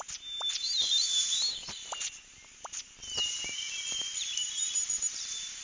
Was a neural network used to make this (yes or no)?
yes